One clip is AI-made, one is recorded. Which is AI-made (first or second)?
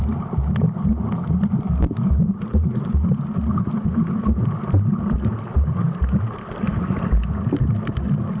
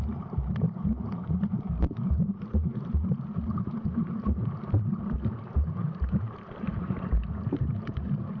second